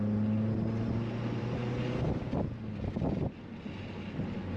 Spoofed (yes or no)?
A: no